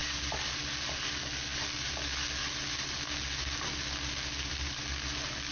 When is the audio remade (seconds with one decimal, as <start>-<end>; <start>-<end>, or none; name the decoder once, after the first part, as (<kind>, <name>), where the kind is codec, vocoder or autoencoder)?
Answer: none